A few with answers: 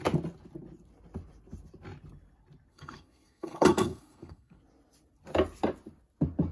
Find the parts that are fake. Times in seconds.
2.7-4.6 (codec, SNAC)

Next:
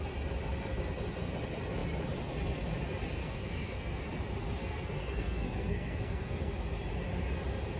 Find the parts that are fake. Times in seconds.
3.2-4.0 (codec, SNAC); 4.6-6.6

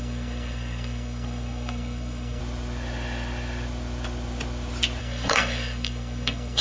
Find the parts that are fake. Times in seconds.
0.0-2.4 (codec, SNAC); 5.0-6.6

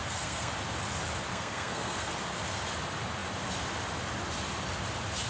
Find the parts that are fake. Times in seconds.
0.0-0.5 (codec, SNAC); 1.3-2.1

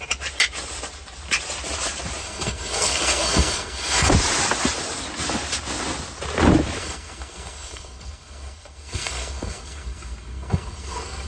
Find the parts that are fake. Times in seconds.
2.2-4.1 (codec, SNAC); 6.8-11.3

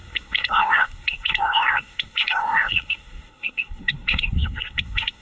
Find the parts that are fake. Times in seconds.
0.0-5.2 (codec, SNAC)